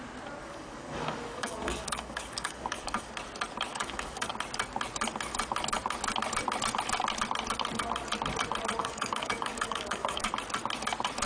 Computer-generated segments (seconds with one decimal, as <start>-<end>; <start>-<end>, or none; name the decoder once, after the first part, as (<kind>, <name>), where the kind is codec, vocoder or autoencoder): 0.4-3.1 (codec, DAC); 3.7-4.3; 8.8-10.3